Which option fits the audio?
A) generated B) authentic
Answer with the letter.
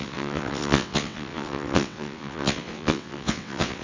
A